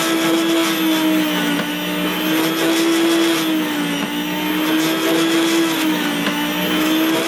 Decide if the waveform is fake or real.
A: real